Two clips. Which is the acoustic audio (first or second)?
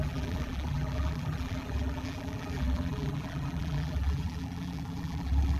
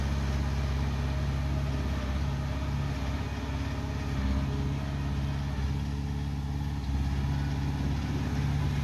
second